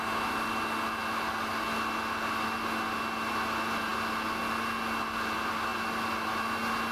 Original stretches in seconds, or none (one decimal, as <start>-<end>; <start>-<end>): 0.0-6.9